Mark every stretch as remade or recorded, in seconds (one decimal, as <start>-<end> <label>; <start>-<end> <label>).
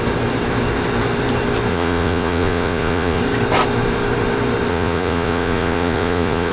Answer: 0.0-1.7 recorded; 1.7-3.2 remade; 3.2-4.7 recorded; 4.7-6.5 remade